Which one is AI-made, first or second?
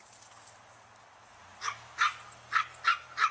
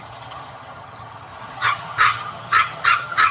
second